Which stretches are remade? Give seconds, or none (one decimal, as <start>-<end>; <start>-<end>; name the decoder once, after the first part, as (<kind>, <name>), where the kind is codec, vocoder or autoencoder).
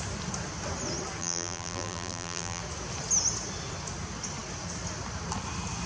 1.2-2.6 (vocoder, BigVGAN v2)